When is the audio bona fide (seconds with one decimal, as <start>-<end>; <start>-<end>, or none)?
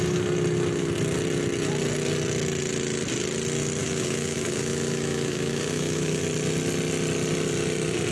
0.0-3.8; 6.2-8.1